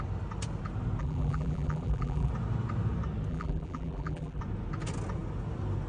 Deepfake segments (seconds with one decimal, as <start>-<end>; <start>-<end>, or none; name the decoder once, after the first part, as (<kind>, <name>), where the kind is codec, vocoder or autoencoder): 1.0-2.3 (vocoder, BigVGAN v2); 3.3-4.4